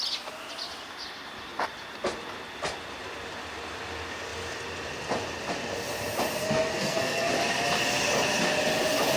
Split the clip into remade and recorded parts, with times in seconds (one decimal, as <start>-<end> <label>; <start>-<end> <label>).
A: 0.0-6.4 recorded; 6.4-7.3 remade; 7.3-9.2 recorded

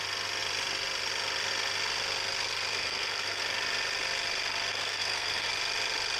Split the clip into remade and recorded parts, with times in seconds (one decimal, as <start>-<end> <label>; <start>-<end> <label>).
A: 0.0-2.7 recorded; 2.7-3.4 remade; 3.4-4.7 recorded; 4.7-5.5 remade; 5.5-6.2 recorded

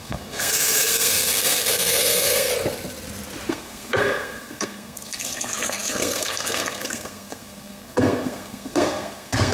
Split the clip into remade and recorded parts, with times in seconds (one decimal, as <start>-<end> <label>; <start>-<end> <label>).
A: 0.0-2.5 remade; 2.5-3.5 recorded; 3.5-9.5 remade

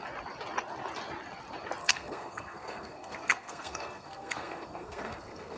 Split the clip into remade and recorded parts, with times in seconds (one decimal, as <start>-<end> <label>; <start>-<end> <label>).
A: 0.0-1.8 recorded; 1.8-5.6 remade

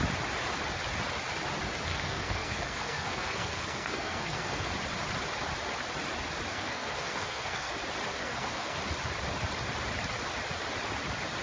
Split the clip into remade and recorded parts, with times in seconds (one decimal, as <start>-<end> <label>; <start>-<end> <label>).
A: 0.0-1.9 recorded; 1.9-4.7 remade; 4.7-6.5 recorded; 6.5-7.7 remade; 7.7-8.2 recorded; 8.2-8.8 remade; 8.8-11.4 recorded

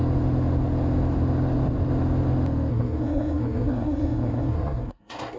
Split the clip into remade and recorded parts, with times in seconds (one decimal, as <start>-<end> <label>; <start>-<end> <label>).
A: 0.0-2.7 recorded; 2.7-5.4 remade

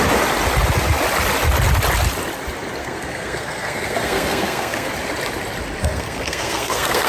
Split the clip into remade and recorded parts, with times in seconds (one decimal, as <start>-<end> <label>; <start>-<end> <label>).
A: 0.0-2.8 recorded; 2.8-4.9 remade; 4.9-5.8 recorded; 5.8-7.1 remade